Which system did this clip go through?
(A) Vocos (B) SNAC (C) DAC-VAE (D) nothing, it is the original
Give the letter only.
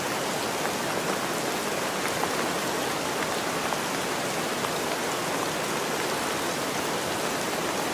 D